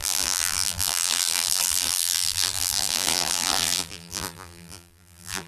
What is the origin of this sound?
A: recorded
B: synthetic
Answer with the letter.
B